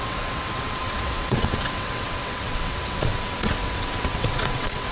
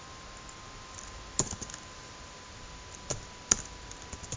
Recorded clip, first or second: second